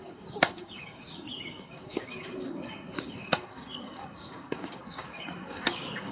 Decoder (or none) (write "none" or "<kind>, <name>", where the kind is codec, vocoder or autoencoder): codec, DAC